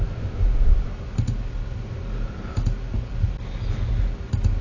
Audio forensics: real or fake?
real